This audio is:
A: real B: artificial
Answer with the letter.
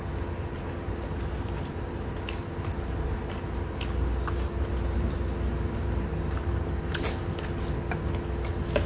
A